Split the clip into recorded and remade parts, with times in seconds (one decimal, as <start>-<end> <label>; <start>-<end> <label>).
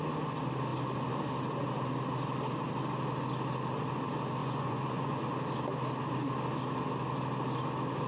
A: 0.0-4.4 recorded; 4.4-5.2 remade; 5.2-8.1 recorded